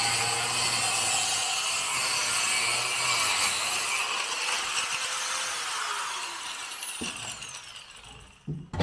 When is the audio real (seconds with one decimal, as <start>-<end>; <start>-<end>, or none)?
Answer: 0.0-8.8